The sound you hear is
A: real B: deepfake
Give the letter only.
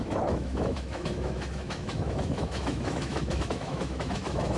B